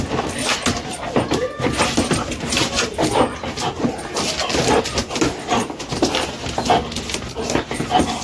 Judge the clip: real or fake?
real